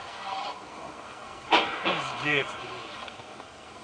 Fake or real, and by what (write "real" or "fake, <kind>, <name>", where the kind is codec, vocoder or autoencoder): fake, codec, SNAC